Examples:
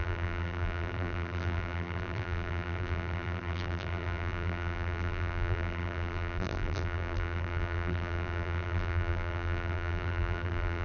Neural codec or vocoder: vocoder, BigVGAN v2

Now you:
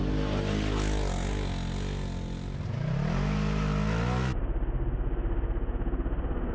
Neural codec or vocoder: none